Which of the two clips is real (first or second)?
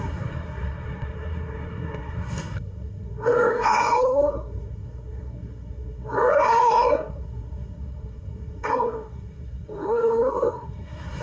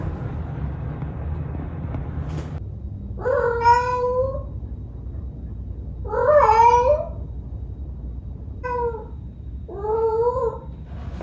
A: second